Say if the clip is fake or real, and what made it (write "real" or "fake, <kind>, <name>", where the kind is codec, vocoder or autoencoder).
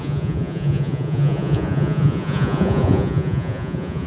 fake, vocoder, Vocos